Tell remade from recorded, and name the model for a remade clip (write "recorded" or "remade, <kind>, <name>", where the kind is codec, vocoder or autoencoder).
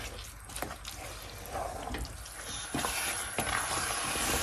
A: recorded